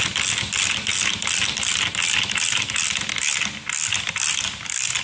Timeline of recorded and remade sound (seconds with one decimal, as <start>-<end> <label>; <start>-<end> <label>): 0.0-5.0 recorded